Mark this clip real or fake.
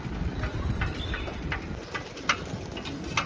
fake